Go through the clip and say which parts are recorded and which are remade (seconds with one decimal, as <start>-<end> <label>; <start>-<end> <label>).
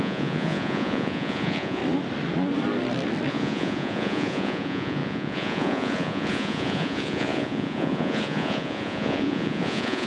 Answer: 0.0-1.8 remade; 1.8-3.3 recorded; 3.3-10.1 remade